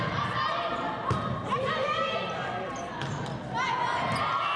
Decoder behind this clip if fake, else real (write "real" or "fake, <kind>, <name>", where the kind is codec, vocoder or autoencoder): real